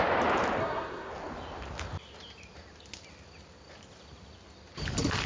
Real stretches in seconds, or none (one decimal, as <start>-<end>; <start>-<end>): 0.0-0.6; 1.1-5.3